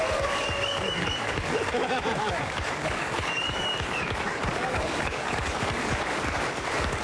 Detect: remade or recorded remade